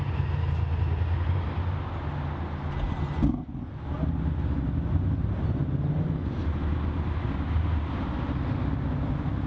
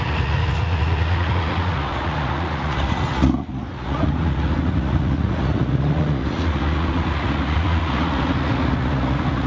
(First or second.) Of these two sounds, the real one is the first